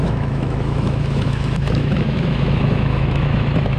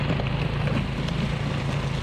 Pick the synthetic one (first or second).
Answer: first